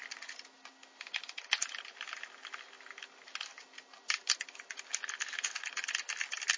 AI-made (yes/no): no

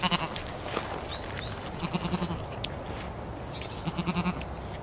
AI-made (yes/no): no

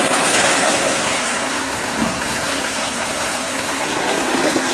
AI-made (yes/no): yes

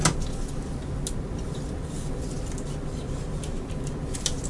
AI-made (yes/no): no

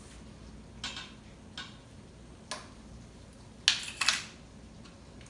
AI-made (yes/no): no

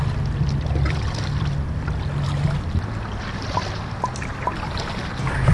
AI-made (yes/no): no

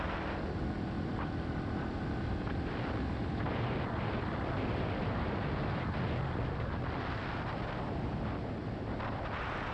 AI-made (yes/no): no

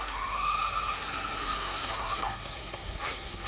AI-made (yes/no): yes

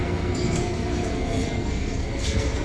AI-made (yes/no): yes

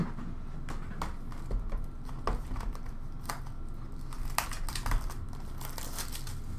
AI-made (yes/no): no